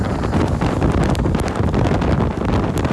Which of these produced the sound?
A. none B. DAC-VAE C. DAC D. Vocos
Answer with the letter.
A